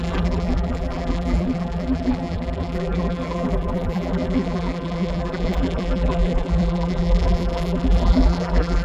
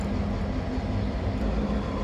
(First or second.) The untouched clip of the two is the second